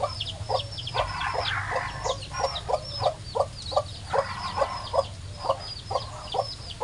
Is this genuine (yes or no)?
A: yes